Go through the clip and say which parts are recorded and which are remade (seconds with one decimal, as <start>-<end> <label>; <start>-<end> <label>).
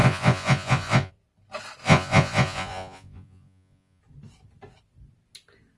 0.0-1.1 remade; 1.1-1.8 recorded; 1.8-4.0 remade; 4.0-5.8 recorded